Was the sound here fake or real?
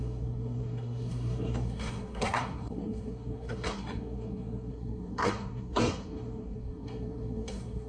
fake